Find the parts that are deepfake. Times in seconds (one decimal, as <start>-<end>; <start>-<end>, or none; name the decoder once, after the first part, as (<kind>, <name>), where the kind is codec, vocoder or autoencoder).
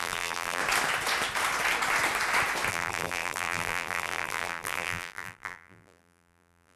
0.0-0.6 (vocoder, BigVGAN v2); 2.7-6.8